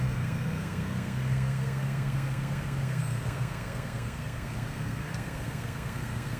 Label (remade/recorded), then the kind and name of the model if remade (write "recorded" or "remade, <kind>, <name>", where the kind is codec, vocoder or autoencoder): remade, codec, SNAC